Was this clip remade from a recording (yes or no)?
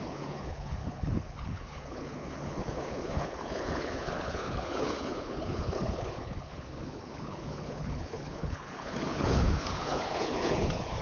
yes